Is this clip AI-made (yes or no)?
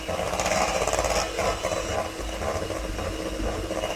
no